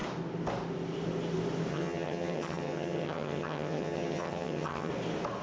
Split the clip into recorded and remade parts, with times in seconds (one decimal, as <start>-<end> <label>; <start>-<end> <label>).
0.0-1.7 recorded; 1.7-4.9 remade; 4.9-5.4 recorded